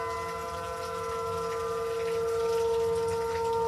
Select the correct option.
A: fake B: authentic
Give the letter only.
B